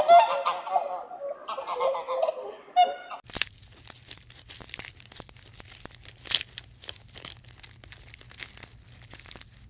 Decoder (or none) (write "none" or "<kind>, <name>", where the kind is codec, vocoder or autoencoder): none